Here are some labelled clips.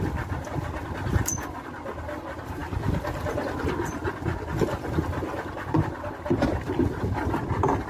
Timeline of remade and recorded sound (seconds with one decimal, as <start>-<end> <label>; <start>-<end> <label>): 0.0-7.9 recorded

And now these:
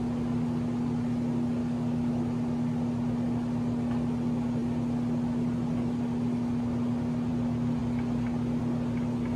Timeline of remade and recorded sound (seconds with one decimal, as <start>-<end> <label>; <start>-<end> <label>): 0.0-1.6 recorded; 1.6-2.1 remade; 2.1-9.4 recorded

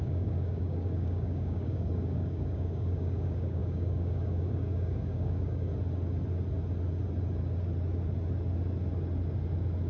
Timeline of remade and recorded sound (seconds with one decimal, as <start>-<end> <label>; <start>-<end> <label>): 0.0-5.7 remade; 5.7-9.9 recorded

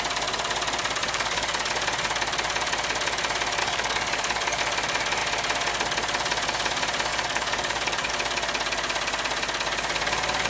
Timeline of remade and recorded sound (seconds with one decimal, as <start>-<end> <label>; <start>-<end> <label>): 0.0-1.0 recorded; 1.0-1.7 remade; 1.7-3.6 recorded; 3.6-4.6 remade; 4.6-7.1 recorded; 7.1-8.1 remade; 8.1-10.5 recorded

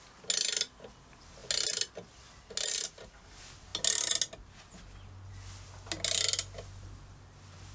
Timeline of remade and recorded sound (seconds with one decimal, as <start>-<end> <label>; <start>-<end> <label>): 0.0-7.7 recorded